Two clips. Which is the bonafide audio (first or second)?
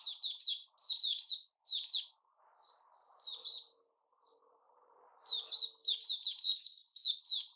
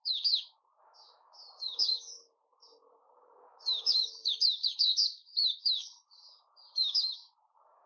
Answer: first